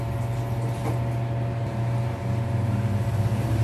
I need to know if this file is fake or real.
real